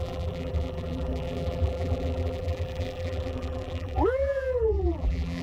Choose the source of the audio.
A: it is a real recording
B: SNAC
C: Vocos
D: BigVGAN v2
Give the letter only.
D